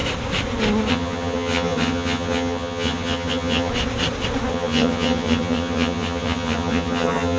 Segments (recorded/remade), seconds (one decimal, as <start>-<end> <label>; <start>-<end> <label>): 0.0-0.9 recorded; 0.9-3.7 remade; 3.7-4.5 recorded; 4.5-7.4 remade